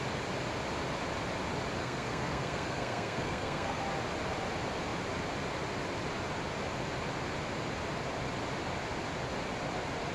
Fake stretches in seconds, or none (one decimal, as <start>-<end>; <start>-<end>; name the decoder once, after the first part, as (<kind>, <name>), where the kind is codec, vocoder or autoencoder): 1.8-3.8 (codec, SNAC)